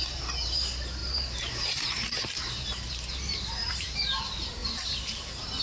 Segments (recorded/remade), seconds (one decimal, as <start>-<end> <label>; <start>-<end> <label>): 0.0-5.6 remade